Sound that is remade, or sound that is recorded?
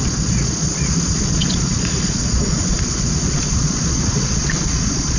remade